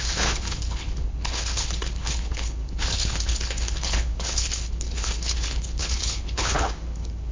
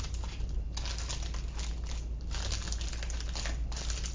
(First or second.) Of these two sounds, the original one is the second